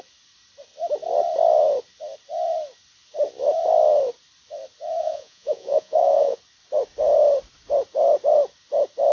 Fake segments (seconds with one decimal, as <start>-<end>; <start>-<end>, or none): 5.0-6.4

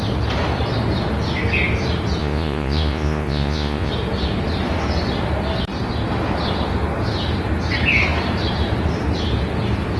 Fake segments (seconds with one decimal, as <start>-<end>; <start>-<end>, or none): 2.2-3.9

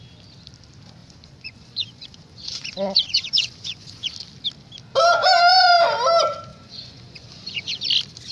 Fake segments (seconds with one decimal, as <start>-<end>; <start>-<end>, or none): 1.0-4.1; 6.5-7.8

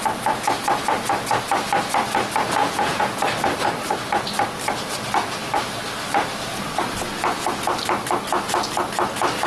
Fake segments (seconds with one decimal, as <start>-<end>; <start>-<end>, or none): 2.6-3.2

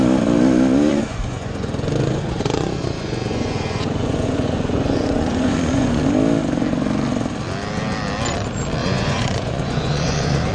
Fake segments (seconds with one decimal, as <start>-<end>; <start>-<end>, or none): 0.9-6.0; 8.8-10.5

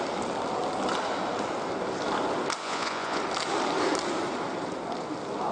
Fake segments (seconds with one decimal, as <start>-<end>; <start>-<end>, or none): 2.6-3.2

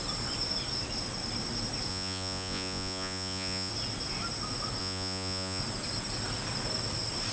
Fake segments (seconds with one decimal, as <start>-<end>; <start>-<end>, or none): 1.9-3.7; 4.8-5.6

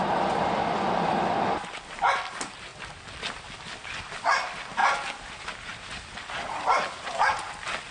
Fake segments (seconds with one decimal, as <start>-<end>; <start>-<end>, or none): none